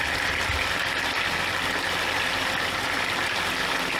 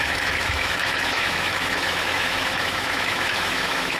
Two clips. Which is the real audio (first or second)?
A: first